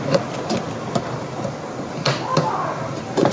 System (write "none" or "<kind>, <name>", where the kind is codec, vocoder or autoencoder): none